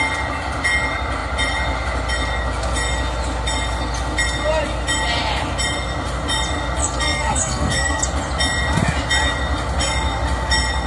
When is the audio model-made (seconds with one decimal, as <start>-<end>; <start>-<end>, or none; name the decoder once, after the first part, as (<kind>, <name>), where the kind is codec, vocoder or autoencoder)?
6.8-8.0 (codec, SNAC)